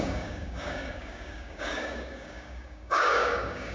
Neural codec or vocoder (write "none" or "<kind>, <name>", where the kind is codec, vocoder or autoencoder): codec, DAC